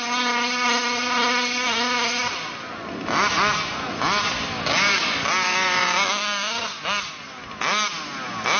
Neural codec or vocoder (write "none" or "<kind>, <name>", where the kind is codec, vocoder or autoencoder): none